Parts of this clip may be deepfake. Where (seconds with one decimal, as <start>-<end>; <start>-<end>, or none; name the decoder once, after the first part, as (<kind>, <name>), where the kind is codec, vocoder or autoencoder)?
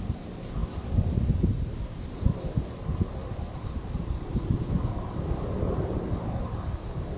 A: 0.0-7.2 (vocoder, BigVGAN v2)